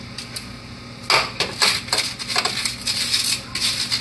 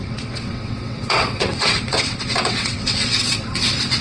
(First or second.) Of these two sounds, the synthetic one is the second